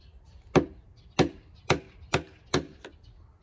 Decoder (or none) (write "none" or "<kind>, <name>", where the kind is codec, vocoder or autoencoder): none